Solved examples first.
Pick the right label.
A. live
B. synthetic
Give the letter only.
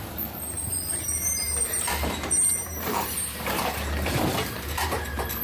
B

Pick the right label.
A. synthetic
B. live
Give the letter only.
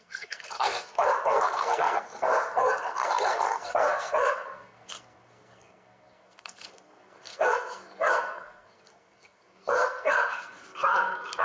A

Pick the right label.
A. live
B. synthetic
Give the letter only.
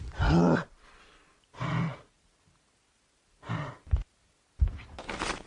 A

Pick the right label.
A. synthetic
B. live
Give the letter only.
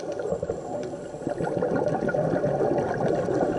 B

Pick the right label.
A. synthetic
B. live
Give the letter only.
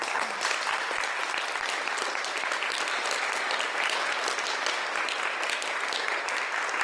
B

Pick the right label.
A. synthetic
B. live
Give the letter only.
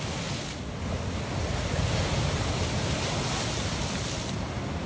B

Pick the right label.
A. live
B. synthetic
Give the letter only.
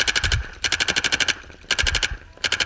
A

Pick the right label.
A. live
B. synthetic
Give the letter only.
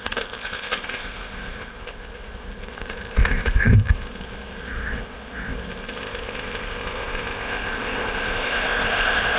B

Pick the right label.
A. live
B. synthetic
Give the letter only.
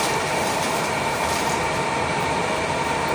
B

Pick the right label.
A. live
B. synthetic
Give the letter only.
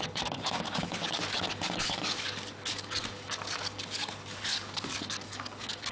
B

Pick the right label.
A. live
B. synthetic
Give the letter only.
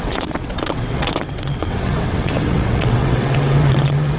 B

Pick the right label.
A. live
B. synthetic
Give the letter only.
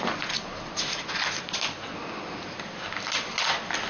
A